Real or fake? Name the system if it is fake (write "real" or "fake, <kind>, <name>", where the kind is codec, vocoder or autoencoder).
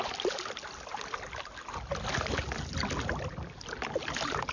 real